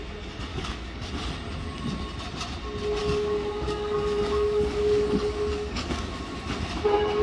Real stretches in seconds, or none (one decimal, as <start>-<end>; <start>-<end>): 0.0-0.5; 1.1-3.0; 6.1-7.2